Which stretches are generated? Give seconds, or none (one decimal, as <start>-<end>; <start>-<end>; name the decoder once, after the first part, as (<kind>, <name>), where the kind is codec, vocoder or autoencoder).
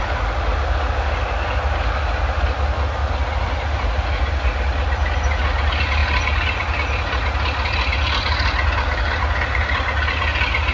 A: none